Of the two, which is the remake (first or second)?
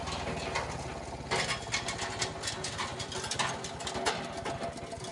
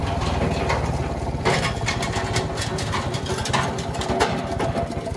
second